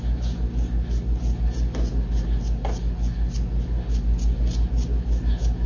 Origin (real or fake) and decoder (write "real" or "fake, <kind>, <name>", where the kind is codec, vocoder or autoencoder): real